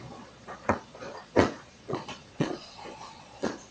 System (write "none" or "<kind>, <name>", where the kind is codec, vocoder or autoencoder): vocoder, Vocos